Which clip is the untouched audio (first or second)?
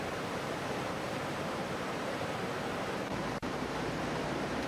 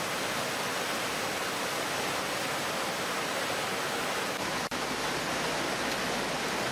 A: second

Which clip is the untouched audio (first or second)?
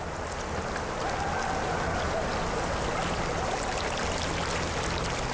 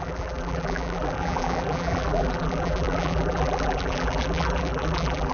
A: first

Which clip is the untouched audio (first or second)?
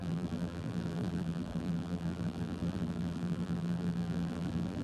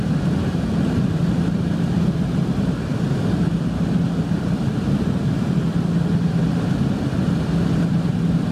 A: second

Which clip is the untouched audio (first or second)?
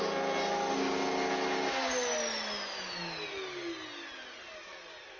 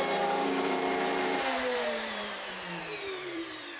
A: first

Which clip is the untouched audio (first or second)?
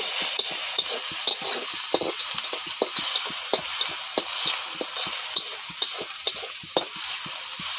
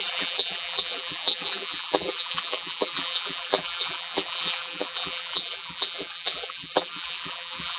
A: first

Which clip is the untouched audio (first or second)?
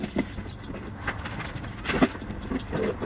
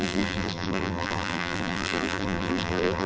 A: first